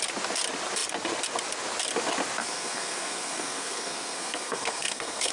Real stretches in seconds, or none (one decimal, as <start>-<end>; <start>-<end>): 0.0-2.4

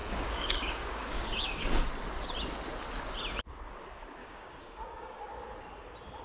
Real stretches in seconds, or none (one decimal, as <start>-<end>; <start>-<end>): 1.9-4.2; 5.2-6.2

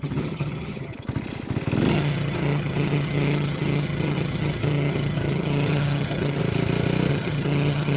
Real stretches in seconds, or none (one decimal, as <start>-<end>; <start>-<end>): 0.9-1.9; 6.4-7.1

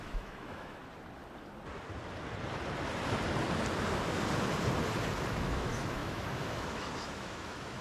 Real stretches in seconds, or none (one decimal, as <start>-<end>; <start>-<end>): 0.8-5.3

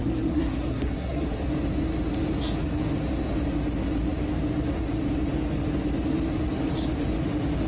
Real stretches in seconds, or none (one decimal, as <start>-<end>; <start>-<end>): 1.4-7.7

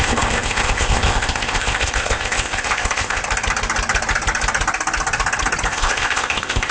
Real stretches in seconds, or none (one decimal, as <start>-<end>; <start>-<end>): 3.2-5.7

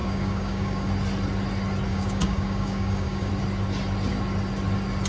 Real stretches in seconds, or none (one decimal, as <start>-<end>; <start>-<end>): 0.9-1.9; 3.3-5.1

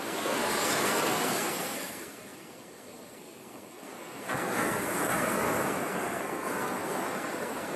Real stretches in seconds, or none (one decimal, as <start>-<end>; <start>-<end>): none